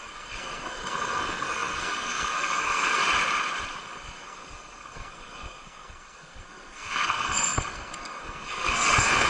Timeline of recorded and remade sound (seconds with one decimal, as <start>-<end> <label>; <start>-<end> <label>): 0.0-3.0 remade; 3.0-3.8 recorded; 3.8-9.3 remade

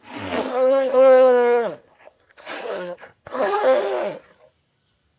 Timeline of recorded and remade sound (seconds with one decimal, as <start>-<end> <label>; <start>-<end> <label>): 0.0-0.5 recorded; 0.5-3.6 remade; 3.6-5.2 recorded

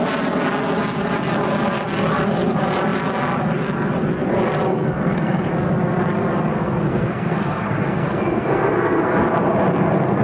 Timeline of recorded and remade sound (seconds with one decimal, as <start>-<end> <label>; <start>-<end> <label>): 0.0-4.7 recorded; 4.7-5.5 remade; 5.5-6.5 recorded; 6.5-9.1 remade; 9.1-10.2 recorded

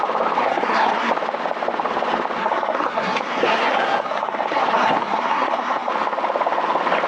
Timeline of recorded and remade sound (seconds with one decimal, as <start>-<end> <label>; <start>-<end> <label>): 0.0-0.4 recorded; 0.4-1.1 remade; 1.1-2.4 recorded; 2.4-5.9 remade; 5.9-7.1 recorded

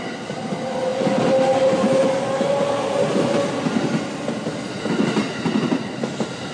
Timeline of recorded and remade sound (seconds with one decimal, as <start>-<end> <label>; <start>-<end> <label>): 0.0-6.5 recorded

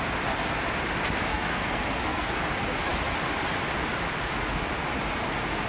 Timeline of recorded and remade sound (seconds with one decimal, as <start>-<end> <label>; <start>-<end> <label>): 0.0-1.3 recorded; 1.3-2.4 remade; 2.4-5.7 recorded